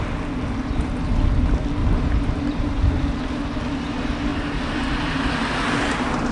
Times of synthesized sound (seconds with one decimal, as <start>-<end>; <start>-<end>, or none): 1.8-3.1; 4.3-5.3